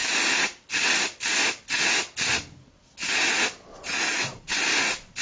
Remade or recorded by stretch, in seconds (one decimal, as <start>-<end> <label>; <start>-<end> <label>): 0.0-3.7 recorded; 3.7-4.5 remade; 4.5-5.2 recorded